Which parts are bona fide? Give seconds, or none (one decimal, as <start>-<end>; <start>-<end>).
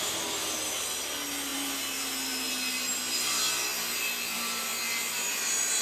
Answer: 0.0-1.5; 2.5-3.7; 4.6-5.8